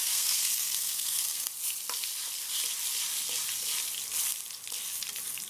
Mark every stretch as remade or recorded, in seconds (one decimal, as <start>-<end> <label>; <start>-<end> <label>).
0.0-1.5 remade; 1.5-5.5 recorded